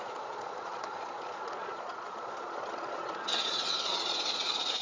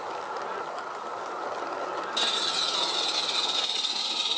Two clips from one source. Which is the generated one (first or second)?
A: first